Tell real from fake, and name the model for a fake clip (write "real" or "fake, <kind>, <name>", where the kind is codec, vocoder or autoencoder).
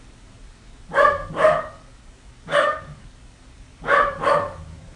fake, codec, DAC